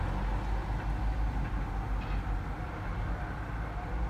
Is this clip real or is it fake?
real